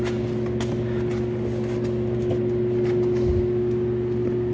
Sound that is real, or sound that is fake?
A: real